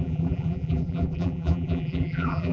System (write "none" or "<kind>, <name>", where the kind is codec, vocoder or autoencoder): vocoder, BigVGAN v2